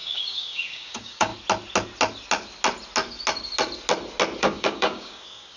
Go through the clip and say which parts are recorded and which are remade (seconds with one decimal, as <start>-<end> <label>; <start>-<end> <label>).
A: 0.0-1.3 remade; 1.3-4.4 recorded; 4.4-5.6 remade